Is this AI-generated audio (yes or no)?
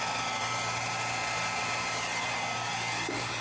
no